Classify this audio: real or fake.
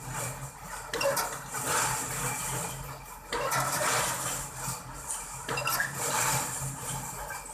real